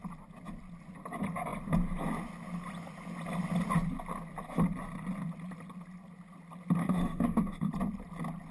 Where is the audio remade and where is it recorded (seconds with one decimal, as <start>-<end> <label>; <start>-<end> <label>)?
0.0-6.8 recorded; 6.8-7.7 remade; 7.7-8.5 recorded